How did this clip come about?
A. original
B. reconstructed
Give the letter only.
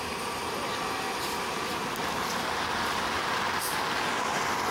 A